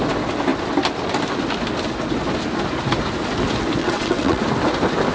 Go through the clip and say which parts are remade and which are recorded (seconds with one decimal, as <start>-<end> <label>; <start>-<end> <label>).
0.0-3.8 recorded; 3.8-4.4 remade; 4.4-5.1 recorded